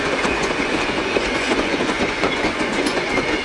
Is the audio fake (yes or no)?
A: yes